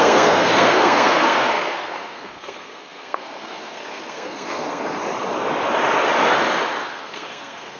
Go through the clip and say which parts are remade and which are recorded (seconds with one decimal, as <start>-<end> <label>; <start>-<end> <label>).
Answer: 0.0-5.0 remade; 5.0-6.8 recorded; 6.8-7.8 remade